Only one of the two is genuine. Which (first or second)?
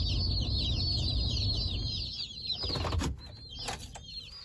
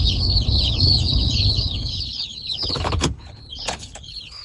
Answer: first